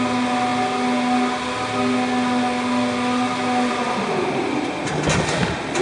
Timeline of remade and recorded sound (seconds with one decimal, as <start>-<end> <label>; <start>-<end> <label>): 0.0-5.8 recorded